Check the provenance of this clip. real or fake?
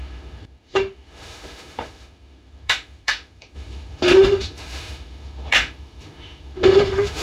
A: fake